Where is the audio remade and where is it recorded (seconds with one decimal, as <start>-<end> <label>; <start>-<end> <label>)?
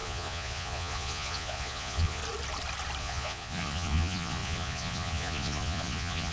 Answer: 0.0-2.2 remade; 2.2-3.0 recorded; 3.0-6.3 remade